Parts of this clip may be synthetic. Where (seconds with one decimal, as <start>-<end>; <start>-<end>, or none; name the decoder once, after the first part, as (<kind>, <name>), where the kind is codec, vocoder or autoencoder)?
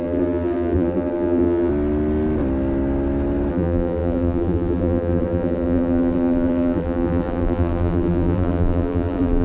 0.0-1.7 (vocoder, BigVGAN v2); 3.5-9.4